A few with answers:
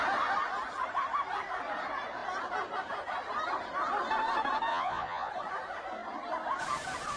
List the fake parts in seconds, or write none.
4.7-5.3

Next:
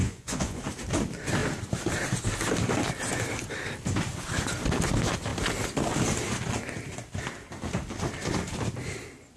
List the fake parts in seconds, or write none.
0.0-0.6

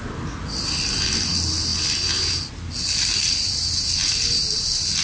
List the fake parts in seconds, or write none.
none